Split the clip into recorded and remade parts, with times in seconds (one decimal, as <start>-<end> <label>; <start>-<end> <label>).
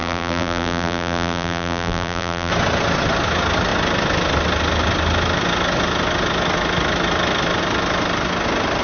0.0-2.5 remade; 2.5-8.8 recorded